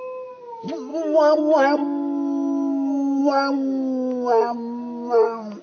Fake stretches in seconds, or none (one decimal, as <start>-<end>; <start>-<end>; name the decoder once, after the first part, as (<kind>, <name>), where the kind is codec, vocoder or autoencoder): none

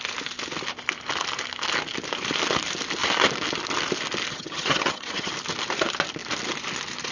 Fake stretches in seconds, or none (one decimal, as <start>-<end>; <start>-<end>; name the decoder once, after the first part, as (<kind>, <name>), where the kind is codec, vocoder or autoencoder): 4.3-5.3 (vocoder, HiFi-GAN)

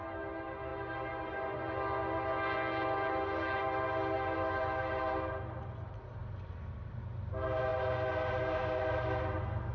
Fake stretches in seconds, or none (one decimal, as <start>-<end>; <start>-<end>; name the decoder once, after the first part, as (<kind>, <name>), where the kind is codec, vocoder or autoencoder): none

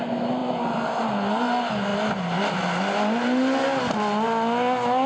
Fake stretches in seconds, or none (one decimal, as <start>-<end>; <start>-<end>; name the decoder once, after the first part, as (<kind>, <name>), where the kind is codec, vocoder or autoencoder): none

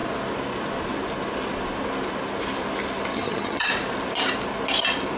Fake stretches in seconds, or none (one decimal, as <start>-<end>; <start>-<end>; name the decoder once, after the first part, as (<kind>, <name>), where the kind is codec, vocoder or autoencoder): 3.1-3.7 (vocoder, HiFi-GAN)